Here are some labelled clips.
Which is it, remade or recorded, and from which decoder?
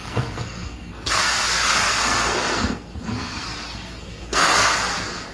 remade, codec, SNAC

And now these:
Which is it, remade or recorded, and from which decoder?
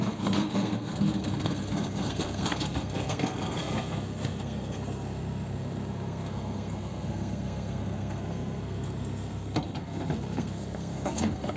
remade, codec, SNAC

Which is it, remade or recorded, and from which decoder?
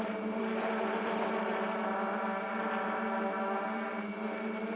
remade, vocoder, BigVGAN v2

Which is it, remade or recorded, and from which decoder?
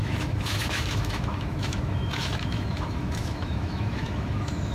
remade, autoencoder, DAC-VAE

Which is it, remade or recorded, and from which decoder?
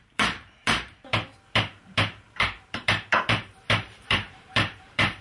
remade, vocoder, BigVGAN v2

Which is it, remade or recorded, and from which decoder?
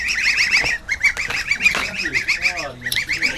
recorded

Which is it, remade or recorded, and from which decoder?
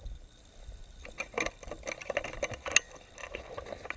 recorded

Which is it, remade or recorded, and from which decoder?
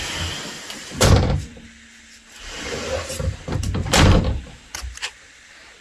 remade, vocoder, BigVGAN v2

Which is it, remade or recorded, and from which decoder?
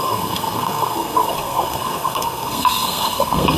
remade, codec, SNAC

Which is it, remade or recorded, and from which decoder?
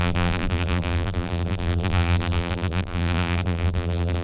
remade, vocoder, BigVGAN v2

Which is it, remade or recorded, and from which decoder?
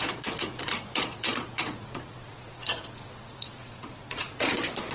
remade, vocoder, Vocos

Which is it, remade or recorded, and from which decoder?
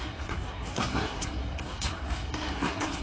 remade, codec, SNAC